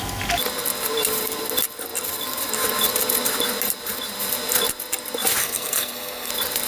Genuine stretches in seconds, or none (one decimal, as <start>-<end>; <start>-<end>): 0.0-5.4; 6.3-6.7